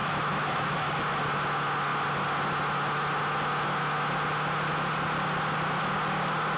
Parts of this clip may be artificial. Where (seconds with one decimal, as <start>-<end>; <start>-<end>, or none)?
0.0-0.9